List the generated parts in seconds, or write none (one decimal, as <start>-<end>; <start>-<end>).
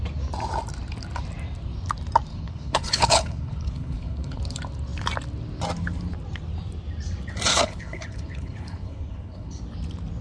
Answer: 2.3-4.4; 7.5-9.6